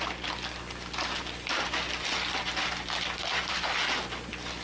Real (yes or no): yes